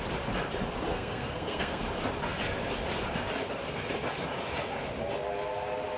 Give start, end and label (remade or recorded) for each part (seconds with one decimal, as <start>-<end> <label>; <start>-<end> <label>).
0.0-0.9 recorded; 0.9-1.8 remade; 1.8-6.0 recorded